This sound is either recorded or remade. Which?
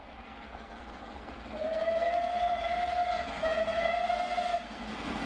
remade